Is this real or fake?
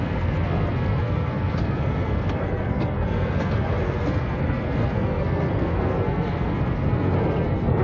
fake